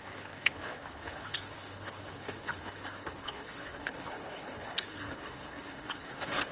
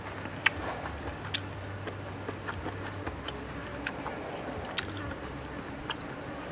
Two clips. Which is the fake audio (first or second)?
first